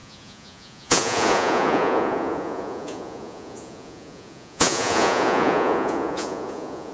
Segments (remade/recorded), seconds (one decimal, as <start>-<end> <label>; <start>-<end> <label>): 0.0-6.9 remade